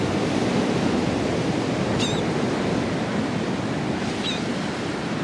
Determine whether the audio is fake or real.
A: real